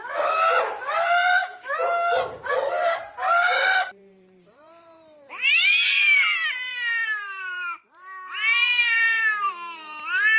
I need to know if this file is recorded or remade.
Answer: remade